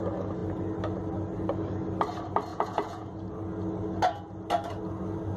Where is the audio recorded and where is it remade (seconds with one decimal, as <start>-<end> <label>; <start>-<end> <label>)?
0.0-2.5 recorded; 2.5-3.1 remade; 3.1-5.4 recorded